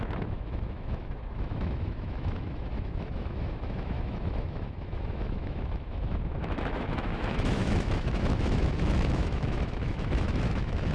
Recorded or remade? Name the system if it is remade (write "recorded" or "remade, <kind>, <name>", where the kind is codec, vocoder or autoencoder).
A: remade, autoencoder, DAC-VAE